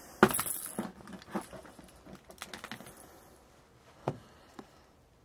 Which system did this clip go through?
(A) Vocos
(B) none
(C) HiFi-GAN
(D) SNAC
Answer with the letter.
B